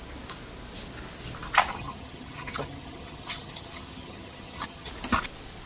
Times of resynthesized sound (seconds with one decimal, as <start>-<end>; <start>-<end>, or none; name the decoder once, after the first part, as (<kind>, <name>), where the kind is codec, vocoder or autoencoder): 1.7-4.9 (vocoder, HiFi-GAN)